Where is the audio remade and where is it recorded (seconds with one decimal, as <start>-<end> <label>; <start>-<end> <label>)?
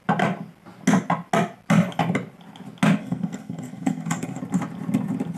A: 0.0-3.0 recorded; 3.0-4.4 remade; 4.4-5.4 recorded